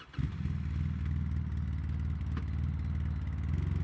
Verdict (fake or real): real